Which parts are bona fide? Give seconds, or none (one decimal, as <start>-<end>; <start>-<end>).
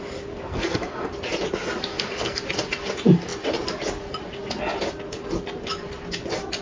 0.0-0.5; 1.1-1.9; 2.4-6.6